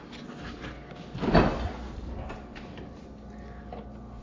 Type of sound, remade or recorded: recorded